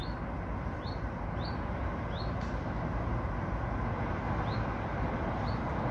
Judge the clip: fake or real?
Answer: real